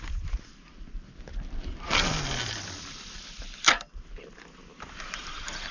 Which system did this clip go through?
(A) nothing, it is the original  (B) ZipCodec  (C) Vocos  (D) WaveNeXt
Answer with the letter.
A